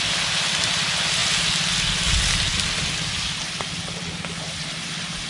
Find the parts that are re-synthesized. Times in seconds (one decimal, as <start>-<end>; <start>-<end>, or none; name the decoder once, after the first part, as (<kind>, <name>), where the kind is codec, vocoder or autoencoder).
none